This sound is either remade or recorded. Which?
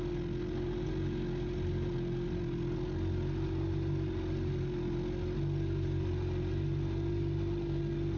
recorded